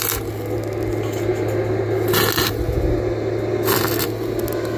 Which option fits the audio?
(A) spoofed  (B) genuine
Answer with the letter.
B